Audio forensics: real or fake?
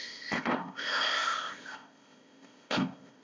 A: fake